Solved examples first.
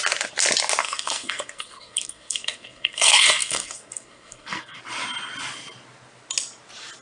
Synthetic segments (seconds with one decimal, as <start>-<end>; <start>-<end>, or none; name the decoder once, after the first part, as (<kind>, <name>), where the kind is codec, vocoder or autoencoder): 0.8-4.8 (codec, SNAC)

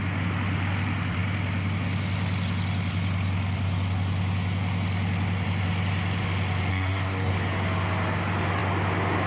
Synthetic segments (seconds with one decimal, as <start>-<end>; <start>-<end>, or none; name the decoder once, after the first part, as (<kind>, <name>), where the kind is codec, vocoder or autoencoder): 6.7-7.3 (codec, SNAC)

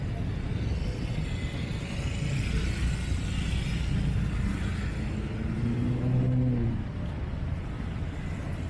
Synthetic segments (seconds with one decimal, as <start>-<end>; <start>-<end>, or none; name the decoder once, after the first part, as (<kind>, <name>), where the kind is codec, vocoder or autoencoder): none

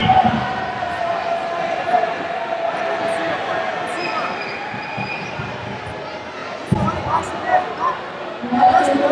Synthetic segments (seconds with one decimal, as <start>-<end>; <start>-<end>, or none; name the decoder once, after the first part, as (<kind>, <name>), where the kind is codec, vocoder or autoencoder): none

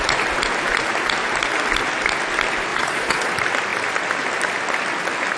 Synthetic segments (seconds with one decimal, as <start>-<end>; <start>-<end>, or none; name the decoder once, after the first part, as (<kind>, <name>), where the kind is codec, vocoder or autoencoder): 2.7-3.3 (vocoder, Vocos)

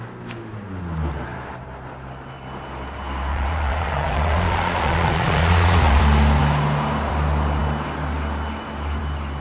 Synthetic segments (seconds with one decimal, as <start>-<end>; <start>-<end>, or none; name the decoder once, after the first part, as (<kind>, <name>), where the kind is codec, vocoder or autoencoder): 3.3-6.0 (vocoder, Vocos)

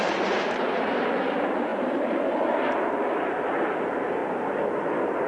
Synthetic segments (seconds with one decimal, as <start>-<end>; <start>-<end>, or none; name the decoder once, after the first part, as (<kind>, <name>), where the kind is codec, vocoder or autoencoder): 0.0-4.2 (vocoder, BigVGAN v2); 4.8-5.3